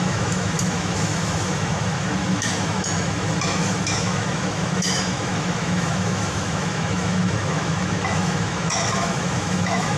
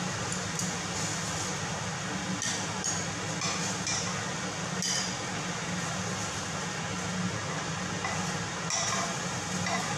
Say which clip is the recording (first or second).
second